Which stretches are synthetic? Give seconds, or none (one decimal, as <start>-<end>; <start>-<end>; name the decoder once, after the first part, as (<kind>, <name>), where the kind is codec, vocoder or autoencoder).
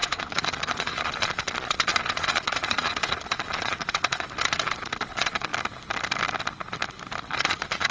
0.0-5.5 (vocoder, Vocos); 7.2-7.9